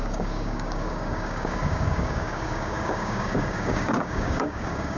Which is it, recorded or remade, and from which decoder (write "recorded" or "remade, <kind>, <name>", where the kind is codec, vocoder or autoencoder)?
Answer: remade, codec, DAC